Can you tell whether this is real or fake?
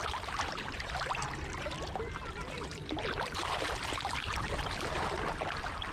real